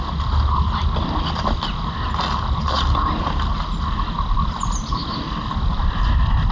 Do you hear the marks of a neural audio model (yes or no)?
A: no